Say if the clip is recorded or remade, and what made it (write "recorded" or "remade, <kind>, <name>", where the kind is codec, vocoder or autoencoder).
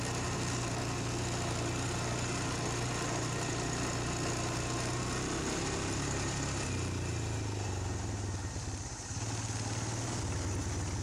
recorded